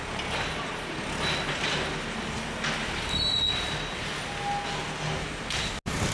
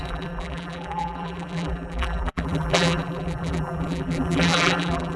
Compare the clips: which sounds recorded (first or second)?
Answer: first